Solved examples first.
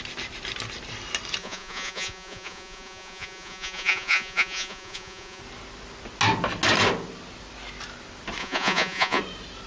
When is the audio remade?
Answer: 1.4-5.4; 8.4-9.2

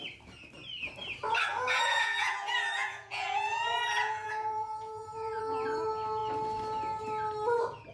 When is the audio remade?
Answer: 1.5-5.4

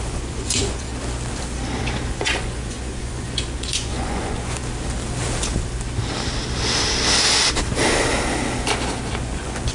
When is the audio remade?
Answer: 0.0-0.9; 2.1-4.6; 9.1-9.7

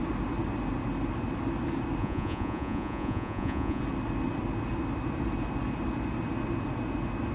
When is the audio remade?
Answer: 2.0-3.8

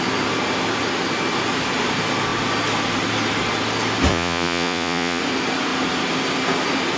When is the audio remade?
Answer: 4.1-5.2